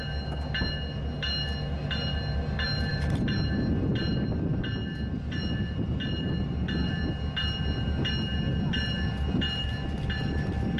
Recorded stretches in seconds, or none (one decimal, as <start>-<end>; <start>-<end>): 0.0-2.9; 3.9-10.8